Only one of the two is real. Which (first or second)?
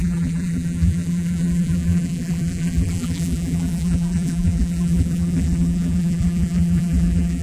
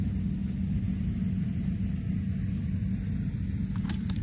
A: second